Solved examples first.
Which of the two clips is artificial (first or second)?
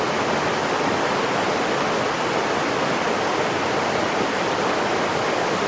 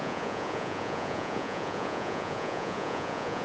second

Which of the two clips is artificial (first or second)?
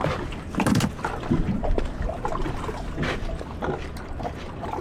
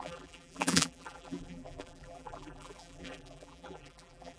second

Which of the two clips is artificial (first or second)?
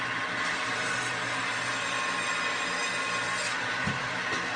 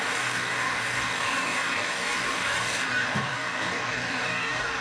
second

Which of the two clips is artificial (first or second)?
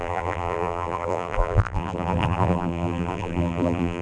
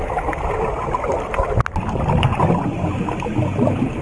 first